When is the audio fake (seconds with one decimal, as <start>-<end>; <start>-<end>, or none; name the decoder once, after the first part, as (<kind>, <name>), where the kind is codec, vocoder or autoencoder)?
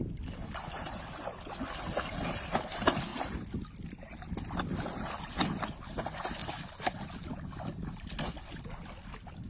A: none